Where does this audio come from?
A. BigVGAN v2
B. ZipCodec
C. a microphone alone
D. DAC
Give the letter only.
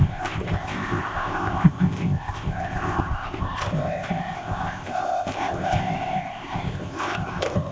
B